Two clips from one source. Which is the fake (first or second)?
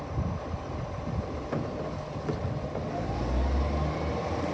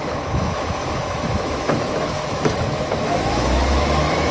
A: second